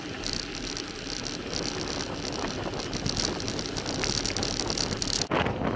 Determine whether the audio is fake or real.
real